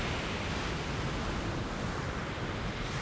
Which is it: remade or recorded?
recorded